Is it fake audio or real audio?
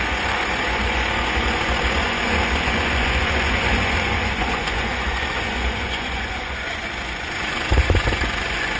fake